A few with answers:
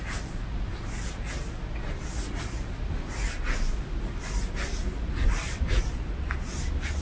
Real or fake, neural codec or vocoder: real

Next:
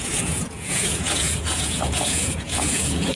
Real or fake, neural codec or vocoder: fake, vocoder, Vocos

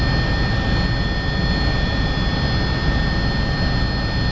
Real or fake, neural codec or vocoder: real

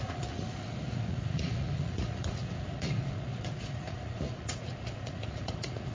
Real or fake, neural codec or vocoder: fake, vocoder, Vocos